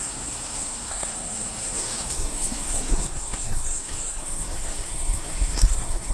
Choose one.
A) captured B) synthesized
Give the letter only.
B